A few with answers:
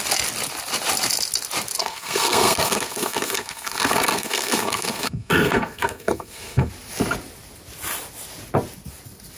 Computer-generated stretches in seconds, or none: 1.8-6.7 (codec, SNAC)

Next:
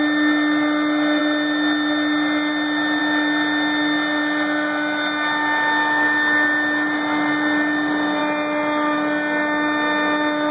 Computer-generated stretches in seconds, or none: none

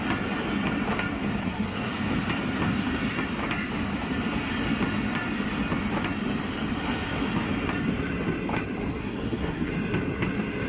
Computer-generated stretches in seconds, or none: 1.4-1.9 (codec, SNAC); 9.0-9.7